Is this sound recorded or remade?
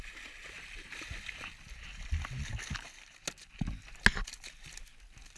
recorded